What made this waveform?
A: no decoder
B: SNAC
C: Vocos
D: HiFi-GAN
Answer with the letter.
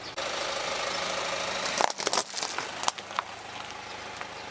A